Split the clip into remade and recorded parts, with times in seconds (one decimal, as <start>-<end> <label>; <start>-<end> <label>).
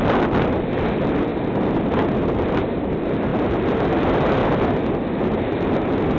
0.0-1.3 remade; 1.3-2.8 recorded; 2.8-3.3 remade; 3.3-3.9 recorded; 3.9-4.4 remade; 4.4-5.2 recorded; 5.2-6.2 remade